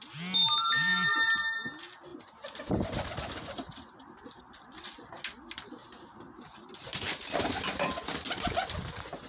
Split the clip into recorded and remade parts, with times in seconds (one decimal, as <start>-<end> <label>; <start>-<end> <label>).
0.0-0.4 recorded; 0.4-1.1 remade; 1.1-2.1 recorded; 2.1-4.4 remade; 4.4-5.8 recorded; 5.8-8.0 remade; 8.0-9.3 recorded